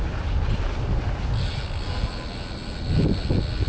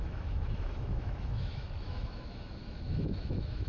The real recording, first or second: first